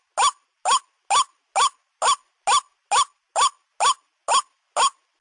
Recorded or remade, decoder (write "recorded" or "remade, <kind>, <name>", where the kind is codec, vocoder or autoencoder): recorded